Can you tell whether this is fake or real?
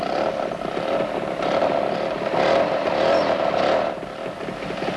real